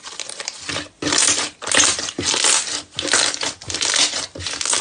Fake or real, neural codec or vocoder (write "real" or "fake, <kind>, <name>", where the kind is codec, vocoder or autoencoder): real